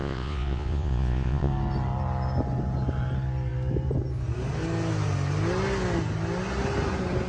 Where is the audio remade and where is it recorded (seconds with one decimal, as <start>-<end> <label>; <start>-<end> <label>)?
0.0-1.5 remade; 1.5-7.3 recorded